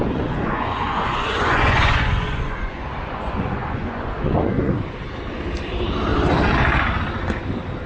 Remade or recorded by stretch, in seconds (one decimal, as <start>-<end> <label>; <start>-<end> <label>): 0.0-4.7 remade; 4.7-7.9 recorded